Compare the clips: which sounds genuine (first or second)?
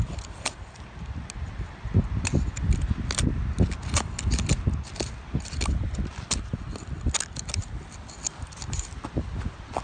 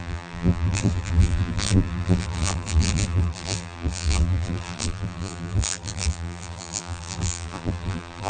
first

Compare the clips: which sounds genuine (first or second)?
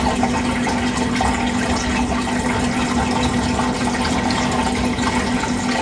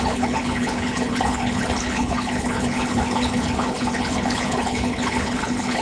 first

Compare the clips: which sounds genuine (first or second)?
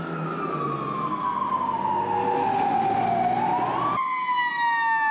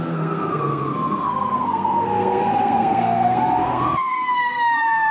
first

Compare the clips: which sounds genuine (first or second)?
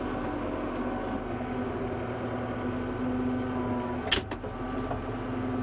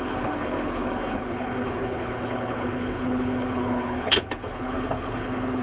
first